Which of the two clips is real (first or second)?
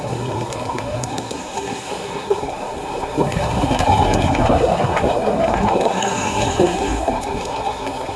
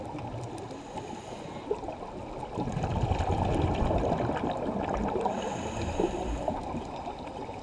second